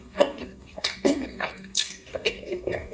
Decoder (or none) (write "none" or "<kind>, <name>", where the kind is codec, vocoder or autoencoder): codec, DAC